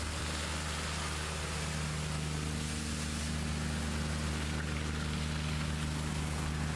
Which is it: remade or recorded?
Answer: recorded